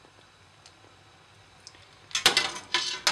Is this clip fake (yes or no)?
no